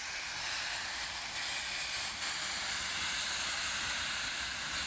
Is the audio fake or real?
real